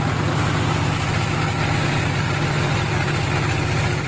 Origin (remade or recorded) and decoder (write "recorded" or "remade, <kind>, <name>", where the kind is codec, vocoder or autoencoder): recorded